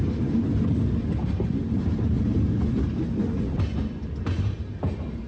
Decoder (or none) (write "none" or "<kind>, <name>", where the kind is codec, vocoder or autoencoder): none